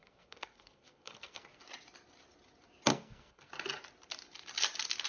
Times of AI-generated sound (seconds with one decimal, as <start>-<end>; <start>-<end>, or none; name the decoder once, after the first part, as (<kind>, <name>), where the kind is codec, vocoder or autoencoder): 0.0-1.6 (codec, SNAC); 2.9-3.5